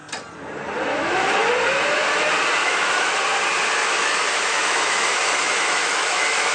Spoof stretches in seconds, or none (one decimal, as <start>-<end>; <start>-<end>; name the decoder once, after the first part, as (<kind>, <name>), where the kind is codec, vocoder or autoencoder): 0.9-1.5 (autoencoder, DAC-VAE); 2.6-3.1; 3.8-6.5